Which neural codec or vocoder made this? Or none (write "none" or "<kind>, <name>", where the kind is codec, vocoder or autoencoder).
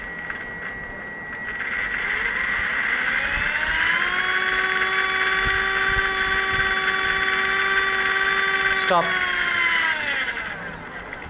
none